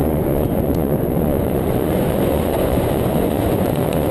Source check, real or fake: fake